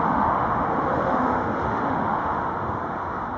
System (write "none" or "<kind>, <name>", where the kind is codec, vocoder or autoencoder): autoencoder, DAC-VAE